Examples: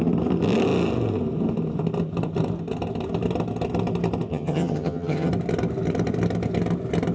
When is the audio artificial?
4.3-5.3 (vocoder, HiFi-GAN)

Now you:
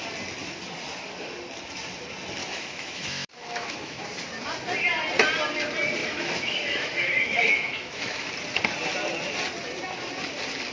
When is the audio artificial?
2.4-4.0 (autoencoder, DAC-VAE); 6.0-8.3

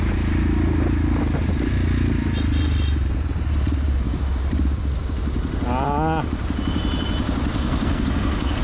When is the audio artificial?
7.5-8.6 (codec, SNAC)

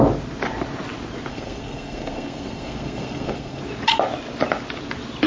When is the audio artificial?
1.3-3.6 (codec, SNAC)